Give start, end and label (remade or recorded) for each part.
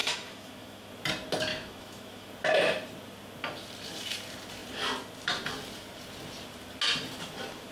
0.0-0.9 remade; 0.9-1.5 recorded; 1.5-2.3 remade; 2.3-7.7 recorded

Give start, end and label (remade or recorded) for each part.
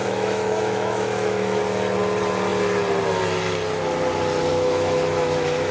0.0-1.6 remade; 1.6-4.5 recorded; 4.5-5.7 remade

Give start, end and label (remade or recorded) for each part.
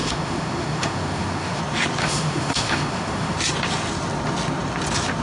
0.0-1.6 remade; 1.6-2.0 recorded; 2.0-3.4 remade; 3.4-5.2 recorded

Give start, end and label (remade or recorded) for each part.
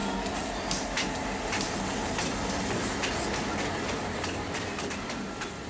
0.0-5.7 recorded